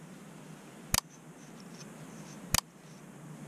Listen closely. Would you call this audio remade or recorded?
recorded